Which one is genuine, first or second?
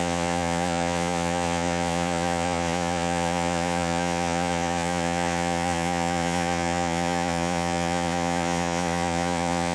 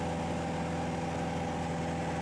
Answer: second